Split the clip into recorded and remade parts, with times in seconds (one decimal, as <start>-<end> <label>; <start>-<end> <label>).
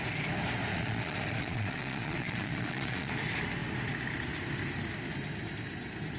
0.0-0.7 recorded; 0.7-3.1 remade; 3.1-6.2 recorded